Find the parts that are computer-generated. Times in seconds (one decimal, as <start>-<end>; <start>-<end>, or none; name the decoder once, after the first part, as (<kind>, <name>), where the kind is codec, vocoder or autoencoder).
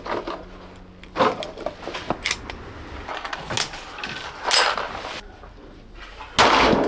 none